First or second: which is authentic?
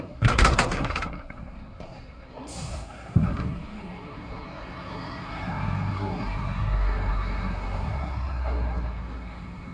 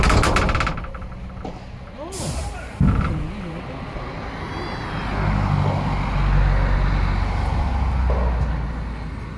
second